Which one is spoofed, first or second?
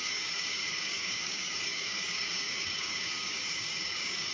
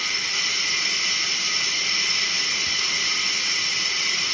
first